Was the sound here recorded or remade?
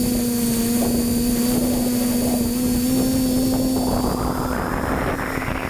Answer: recorded